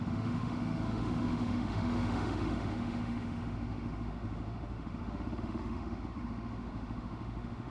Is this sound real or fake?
fake